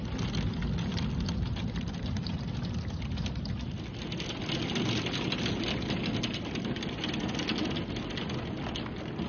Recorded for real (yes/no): yes